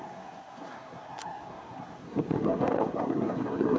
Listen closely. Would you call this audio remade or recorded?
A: remade